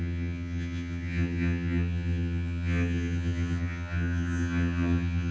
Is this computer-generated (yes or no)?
yes